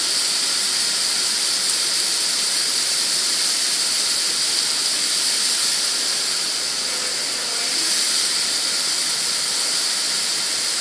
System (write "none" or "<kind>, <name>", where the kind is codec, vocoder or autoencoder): none